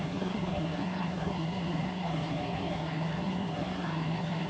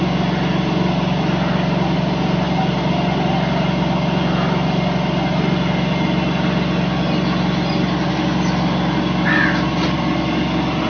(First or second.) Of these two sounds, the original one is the second